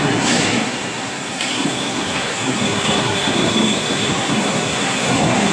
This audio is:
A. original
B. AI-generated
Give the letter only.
B